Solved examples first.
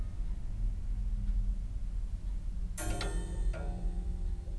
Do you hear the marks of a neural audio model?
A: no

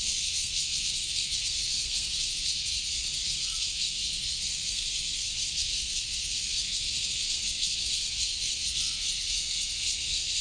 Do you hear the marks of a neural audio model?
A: yes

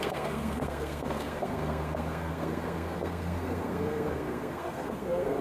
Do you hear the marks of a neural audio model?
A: yes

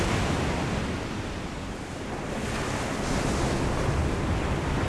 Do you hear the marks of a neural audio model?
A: no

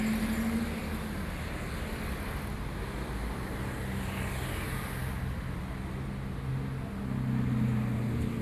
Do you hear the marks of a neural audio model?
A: no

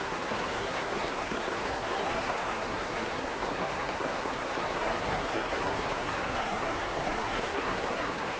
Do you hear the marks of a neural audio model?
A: yes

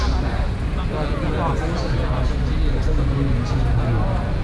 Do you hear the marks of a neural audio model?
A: no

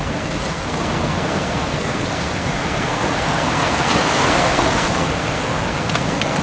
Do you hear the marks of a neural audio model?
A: yes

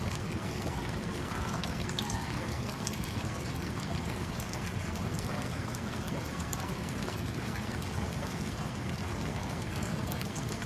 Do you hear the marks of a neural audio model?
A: yes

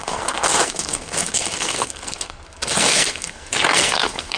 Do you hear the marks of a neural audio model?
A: yes